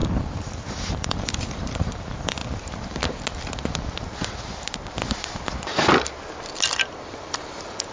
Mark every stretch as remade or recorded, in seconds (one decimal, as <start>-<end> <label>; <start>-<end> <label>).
0.0-2.4 remade; 2.4-7.1 recorded; 7.1-7.9 remade

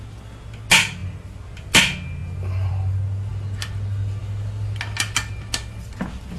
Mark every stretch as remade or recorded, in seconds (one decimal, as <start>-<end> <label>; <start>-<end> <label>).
0.0-6.4 recorded

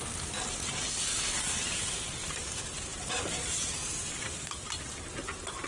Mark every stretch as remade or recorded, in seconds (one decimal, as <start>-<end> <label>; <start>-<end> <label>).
0.0-2.2 recorded; 2.2-5.7 remade

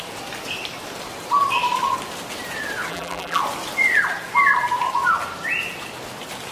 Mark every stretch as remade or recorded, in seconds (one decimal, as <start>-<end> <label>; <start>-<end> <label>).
0.0-2.9 recorded; 2.9-3.4 remade; 3.4-6.5 recorded